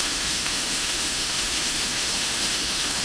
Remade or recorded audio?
remade